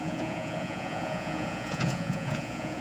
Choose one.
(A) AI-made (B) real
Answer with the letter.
A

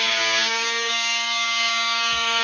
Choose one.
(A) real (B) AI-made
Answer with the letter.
B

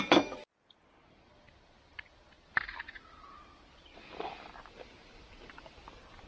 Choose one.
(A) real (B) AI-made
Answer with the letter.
A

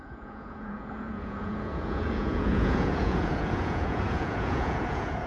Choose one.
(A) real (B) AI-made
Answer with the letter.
B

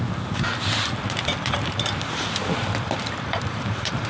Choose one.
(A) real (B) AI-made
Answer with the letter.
B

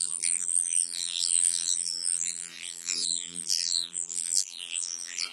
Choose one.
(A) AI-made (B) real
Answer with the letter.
A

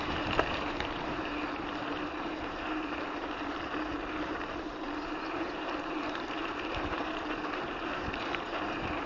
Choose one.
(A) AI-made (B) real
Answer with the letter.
A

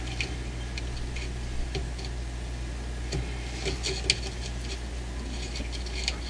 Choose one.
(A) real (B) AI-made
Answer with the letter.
A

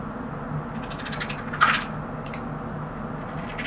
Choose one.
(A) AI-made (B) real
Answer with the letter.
B